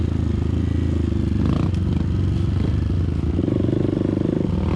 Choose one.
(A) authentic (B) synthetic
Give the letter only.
A